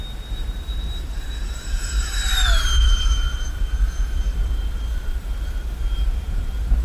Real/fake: fake